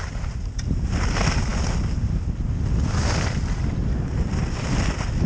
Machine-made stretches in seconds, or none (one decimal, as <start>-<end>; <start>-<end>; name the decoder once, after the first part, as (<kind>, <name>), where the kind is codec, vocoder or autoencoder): none